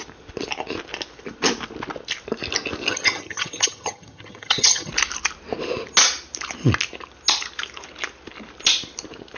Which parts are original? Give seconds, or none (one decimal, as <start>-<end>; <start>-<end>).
0.0-2.9; 4.9-9.4